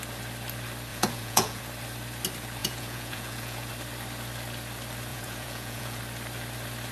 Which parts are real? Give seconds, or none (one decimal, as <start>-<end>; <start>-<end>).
0.0-0.9; 1.6-2.6; 3.7-5.1; 6.0-6.9

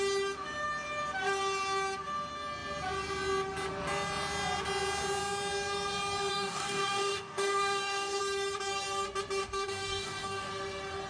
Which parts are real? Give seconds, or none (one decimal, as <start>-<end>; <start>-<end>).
0.0-6.3; 8.2-9.4; 10.5-11.1